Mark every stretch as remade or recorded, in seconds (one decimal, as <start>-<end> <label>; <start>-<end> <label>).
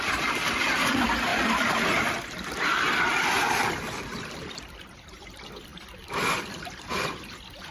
0.0-7.7 remade